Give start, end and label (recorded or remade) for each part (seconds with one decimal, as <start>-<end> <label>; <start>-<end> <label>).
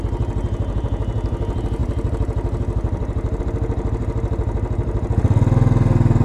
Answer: 0.0-6.2 recorded